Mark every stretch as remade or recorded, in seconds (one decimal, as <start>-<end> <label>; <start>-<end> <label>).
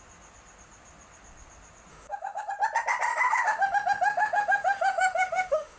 0.0-1.9 recorded; 1.9-2.5 remade; 2.5-3.1 recorded; 3.1-5.8 remade